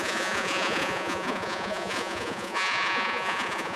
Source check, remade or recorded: remade